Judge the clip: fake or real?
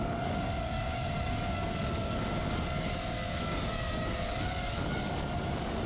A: fake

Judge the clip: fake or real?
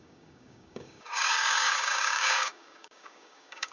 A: fake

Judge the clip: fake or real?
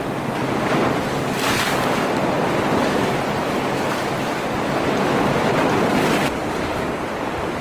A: real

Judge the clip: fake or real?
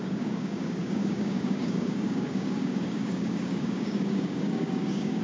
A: fake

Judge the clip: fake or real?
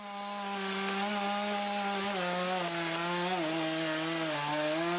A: real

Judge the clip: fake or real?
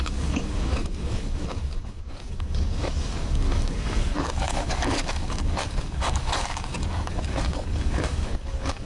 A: fake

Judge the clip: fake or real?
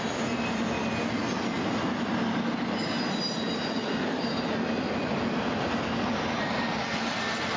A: real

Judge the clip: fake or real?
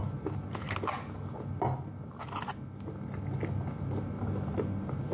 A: real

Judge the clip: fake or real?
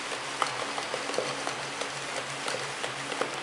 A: real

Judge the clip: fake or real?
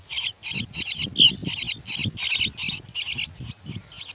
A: real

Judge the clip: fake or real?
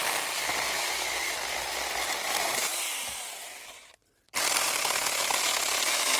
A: real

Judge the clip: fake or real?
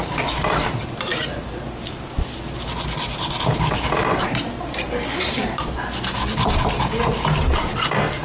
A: real